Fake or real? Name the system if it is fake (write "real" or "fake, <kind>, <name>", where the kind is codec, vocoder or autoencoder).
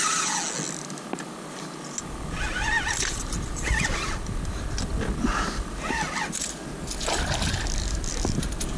real